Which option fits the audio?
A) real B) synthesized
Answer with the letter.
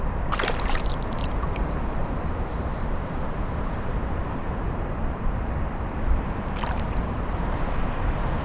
B